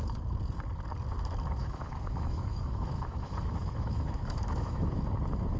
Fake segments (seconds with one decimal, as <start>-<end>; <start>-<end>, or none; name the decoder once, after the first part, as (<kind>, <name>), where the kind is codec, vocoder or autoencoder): 1.6-5.0 (autoencoder, DAC-VAE)